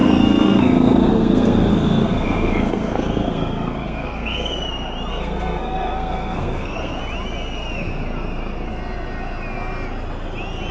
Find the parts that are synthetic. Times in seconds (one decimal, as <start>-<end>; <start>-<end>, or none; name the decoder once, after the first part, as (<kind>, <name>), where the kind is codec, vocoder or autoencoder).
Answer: 0.0-4.6 (codec, SNAC); 5.1-7.0